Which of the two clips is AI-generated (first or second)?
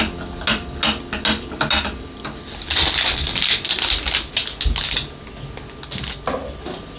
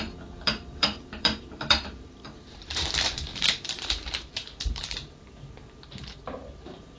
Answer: second